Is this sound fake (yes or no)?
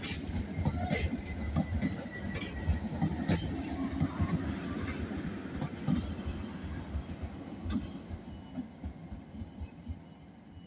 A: no